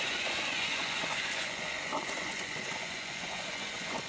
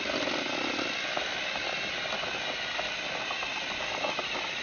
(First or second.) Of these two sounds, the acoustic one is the second